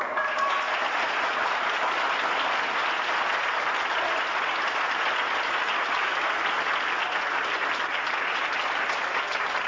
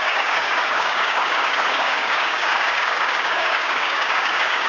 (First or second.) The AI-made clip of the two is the second